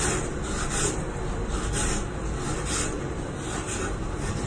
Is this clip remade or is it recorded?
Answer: recorded